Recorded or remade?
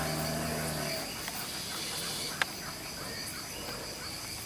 recorded